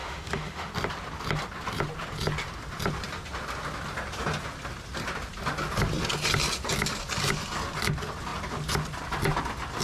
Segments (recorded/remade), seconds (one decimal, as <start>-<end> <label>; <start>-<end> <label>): 0.0-0.7 remade; 0.7-9.8 recorded